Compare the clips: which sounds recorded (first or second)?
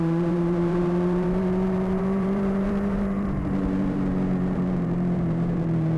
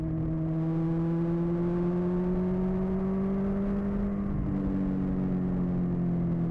second